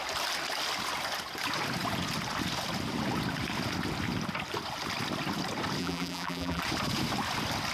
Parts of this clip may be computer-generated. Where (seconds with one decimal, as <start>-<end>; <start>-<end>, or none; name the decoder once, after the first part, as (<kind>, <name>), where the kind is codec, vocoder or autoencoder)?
5.8-6.6 (vocoder, BigVGAN v2)